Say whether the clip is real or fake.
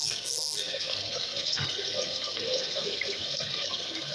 fake